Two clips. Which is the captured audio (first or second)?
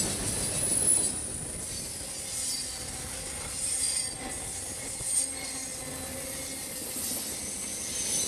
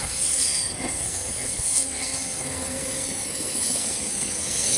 first